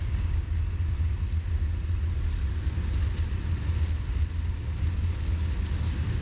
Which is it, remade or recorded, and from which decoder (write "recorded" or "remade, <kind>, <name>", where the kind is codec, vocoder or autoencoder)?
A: recorded